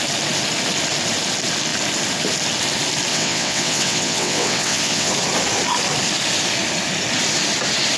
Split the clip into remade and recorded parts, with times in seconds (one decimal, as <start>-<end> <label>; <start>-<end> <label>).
0.0-3.1 recorded; 3.1-5.1 remade; 5.1-8.0 recorded